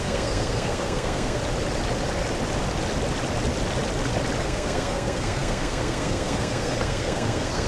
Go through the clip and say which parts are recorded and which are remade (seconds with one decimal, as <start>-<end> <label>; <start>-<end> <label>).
0.0-1.4 remade; 1.4-4.4 recorded; 4.4-7.7 remade